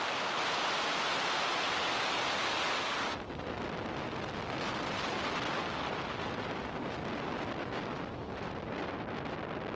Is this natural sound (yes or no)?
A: yes